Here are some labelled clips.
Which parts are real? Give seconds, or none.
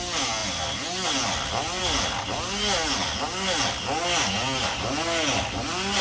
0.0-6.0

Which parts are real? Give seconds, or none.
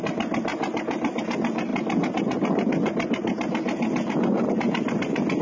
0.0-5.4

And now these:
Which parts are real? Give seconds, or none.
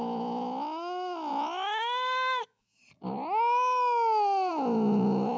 2.8-4.5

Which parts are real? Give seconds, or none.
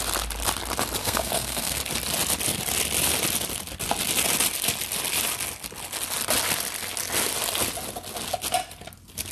0.0-1.0; 1.8-9.3